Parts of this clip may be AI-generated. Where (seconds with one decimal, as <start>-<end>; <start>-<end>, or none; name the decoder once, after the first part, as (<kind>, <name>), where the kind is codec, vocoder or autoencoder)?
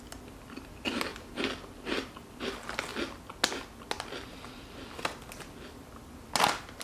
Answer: none